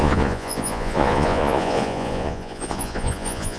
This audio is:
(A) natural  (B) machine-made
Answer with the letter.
B